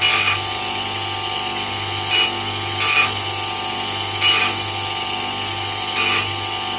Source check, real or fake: real